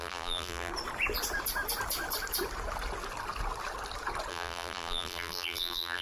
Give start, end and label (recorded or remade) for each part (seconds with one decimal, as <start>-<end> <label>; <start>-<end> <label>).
0.0-0.7 remade; 0.7-4.3 recorded; 4.3-6.0 remade